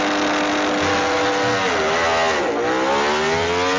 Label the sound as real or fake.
real